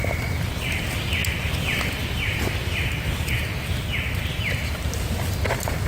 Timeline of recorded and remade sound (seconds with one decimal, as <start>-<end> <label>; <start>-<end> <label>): 0.0-5.9 recorded